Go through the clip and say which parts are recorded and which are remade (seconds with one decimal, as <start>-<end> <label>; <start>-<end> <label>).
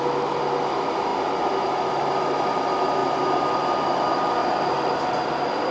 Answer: 0.0-4.4 recorded; 4.4-5.0 remade; 5.0-5.7 recorded